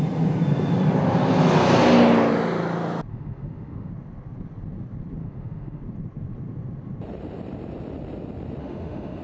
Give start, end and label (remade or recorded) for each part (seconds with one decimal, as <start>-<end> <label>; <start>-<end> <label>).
0.0-3.1 recorded; 3.1-3.9 remade; 3.9-5.2 recorded; 5.2-5.8 remade; 5.8-8.6 recorded; 8.6-9.2 remade